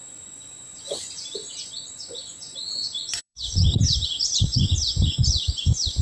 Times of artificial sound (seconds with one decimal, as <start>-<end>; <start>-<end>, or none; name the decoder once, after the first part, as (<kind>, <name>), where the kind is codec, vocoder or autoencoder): 0.0-6.0 (vocoder, Vocos)